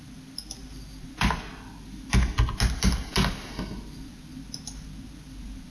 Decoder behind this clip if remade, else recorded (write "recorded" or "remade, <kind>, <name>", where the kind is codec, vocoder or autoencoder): recorded